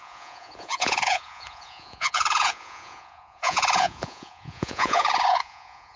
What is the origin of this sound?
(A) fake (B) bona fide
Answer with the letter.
A